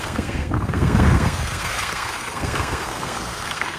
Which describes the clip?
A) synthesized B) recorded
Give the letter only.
A